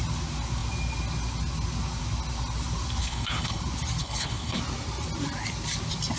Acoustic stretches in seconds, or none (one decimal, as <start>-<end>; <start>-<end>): 0.0-3.0; 3.6-4.0; 4.6-6.2